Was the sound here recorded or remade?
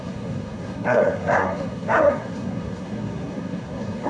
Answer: remade